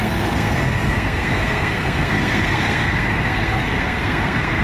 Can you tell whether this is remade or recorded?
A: remade